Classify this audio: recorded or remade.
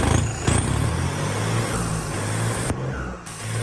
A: recorded